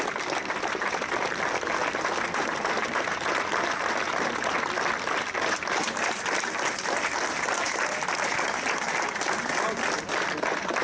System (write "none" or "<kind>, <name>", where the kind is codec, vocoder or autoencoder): none